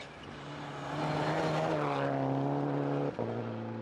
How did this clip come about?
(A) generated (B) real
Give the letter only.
B